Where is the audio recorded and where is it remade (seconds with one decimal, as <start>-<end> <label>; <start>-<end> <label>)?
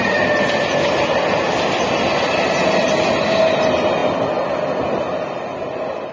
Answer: 0.0-6.1 recorded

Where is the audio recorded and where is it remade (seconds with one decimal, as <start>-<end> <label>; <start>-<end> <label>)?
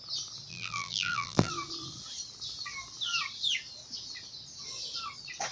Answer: 0.0-0.5 recorded; 0.5-1.5 remade; 1.5-5.5 recorded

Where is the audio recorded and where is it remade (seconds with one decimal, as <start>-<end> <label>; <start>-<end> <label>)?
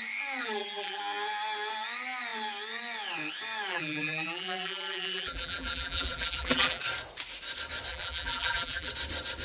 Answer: 0.0-0.4 recorded; 0.4-1.0 remade; 1.0-3.7 recorded; 3.7-6.8 remade; 6.8-7.9 recorded; 7.9-8.9 remade; 8.9-9.4 recorded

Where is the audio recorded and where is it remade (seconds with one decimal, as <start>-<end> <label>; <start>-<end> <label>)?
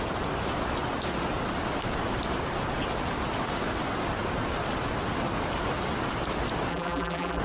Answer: 0.0-6.7 recorded; 6.7-7.4 remade